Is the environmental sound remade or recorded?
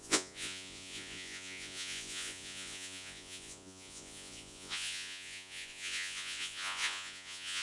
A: remade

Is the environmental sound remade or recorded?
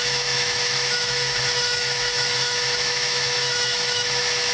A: remade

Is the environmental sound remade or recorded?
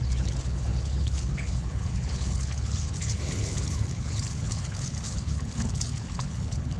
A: remade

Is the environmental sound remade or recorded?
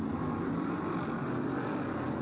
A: recorded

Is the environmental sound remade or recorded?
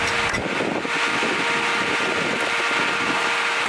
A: recorded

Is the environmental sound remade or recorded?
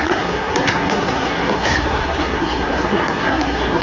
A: remade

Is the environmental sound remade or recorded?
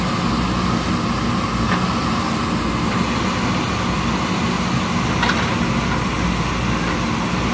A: recorded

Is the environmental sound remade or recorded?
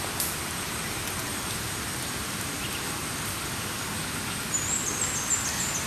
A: recorded